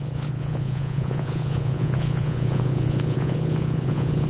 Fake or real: fake